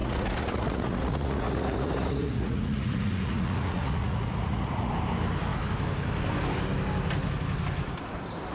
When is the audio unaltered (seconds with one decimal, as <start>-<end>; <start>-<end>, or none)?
4.9-8.5